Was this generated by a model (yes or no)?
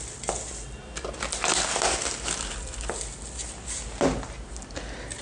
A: no